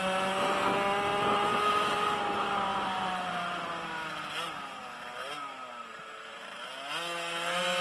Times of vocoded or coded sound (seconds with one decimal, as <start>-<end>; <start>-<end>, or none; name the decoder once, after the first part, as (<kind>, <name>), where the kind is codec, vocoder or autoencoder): 2.7-3.7 (vocoder, BigVGAN v2); 5.9-6.6